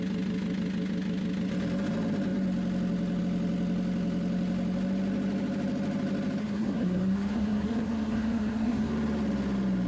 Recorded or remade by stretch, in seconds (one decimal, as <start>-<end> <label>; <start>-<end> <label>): 0.0-6.4 recorded; 6.4-8.9 remade; 8.9-9.9 recorded